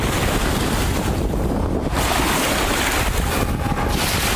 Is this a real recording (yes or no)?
yes